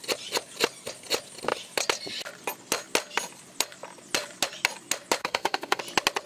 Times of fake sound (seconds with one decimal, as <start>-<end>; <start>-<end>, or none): 5.2-5.8